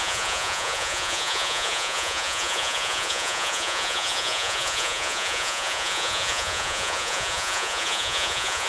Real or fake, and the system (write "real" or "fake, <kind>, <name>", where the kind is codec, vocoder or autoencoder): fake, vocoder, Vocos